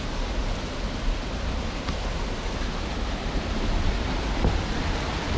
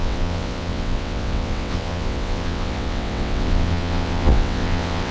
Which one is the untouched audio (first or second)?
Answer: first